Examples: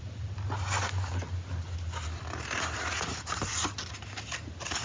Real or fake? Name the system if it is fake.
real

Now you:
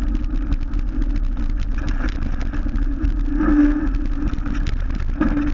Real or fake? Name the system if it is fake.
real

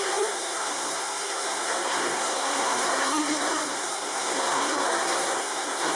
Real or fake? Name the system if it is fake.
fake, codec, SNAC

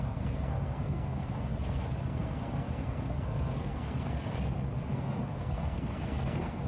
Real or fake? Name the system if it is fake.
fake, codec, SNAC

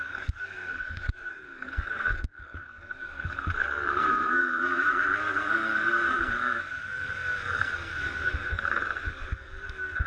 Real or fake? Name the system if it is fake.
fake, codec, SNAC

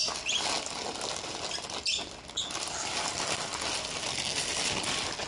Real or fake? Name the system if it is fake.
real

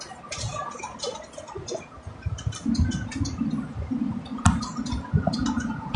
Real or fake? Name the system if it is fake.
real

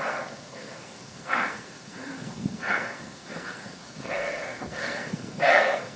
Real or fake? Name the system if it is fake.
fake, codec, SNAC